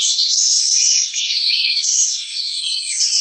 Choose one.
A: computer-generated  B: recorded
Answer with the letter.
A